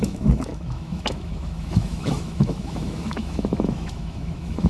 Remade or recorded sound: remade